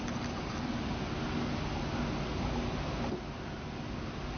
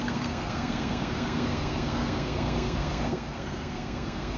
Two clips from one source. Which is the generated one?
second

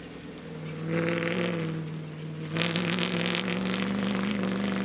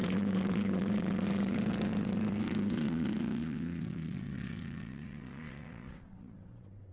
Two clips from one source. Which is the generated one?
second